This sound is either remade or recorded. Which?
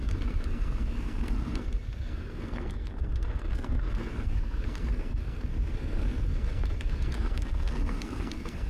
remade